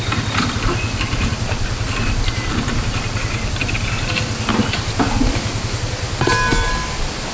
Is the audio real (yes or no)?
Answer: yes